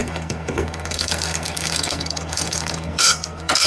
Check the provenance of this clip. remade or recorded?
remade